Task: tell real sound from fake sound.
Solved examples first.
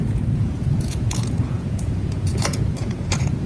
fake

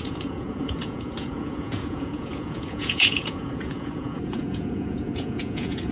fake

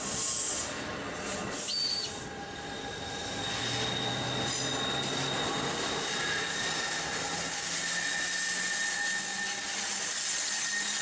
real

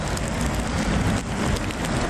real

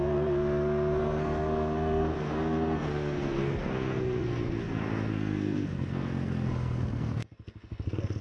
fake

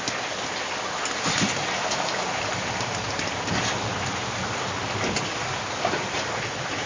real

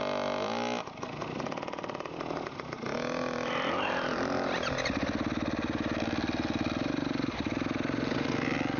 real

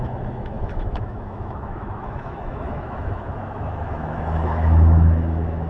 fake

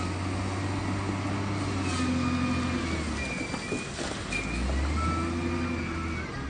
real